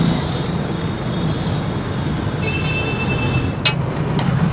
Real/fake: real